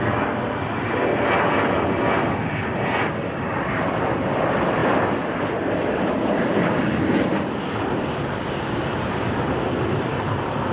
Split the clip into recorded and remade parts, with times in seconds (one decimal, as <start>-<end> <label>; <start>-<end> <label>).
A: 0.0-10.7 remade